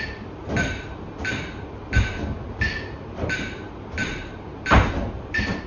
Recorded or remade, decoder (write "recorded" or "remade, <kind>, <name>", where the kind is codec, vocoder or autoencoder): recorded